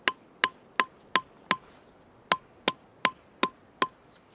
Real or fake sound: real